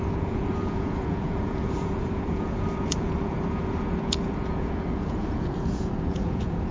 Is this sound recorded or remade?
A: remade